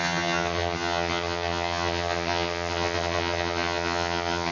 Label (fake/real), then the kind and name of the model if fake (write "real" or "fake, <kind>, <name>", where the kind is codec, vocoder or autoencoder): fake, vocoder, HiFi-GAN